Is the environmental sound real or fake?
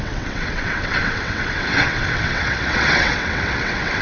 fake